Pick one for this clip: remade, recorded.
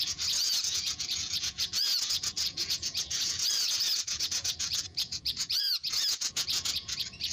remade